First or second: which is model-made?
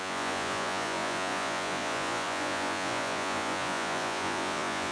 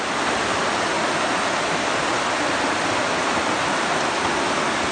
first